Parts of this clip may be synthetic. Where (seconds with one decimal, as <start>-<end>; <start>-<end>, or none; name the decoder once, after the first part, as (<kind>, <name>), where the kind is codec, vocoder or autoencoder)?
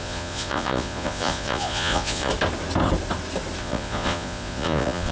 0.0-2.3 (vocoder, Vocos); 3.6-5.1